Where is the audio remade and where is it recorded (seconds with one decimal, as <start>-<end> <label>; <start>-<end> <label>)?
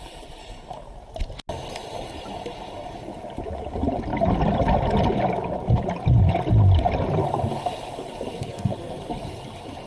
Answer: 0.0-8.4 recorded; 8.4-9.0 remade; 9.0-9.9 recorded